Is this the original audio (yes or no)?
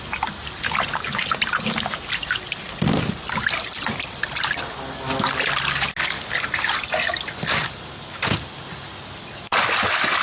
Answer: yes